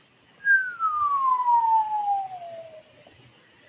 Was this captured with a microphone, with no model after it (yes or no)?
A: yes